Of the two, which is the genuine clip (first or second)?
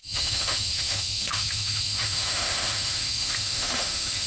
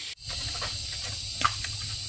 second